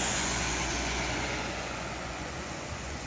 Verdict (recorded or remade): remade